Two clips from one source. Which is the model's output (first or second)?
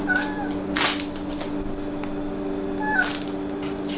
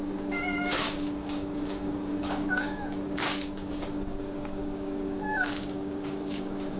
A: second